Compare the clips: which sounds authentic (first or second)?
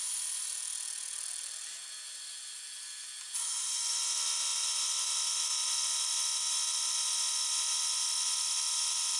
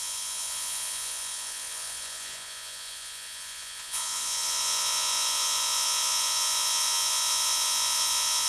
first